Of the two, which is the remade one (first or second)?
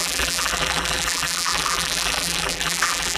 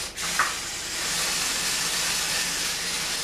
first